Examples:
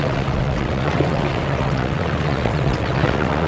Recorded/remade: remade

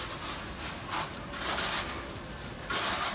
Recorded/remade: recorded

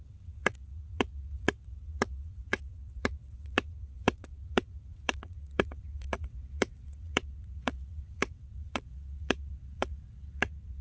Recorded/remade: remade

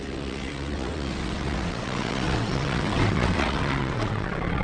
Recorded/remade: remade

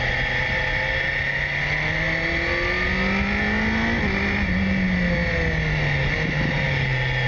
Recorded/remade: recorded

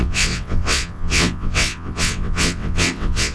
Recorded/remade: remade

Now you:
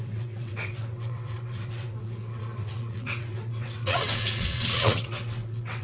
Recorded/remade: remade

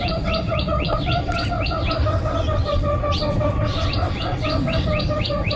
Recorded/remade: remade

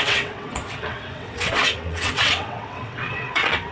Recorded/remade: remade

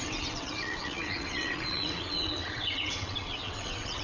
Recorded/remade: remade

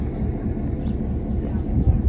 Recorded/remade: recorded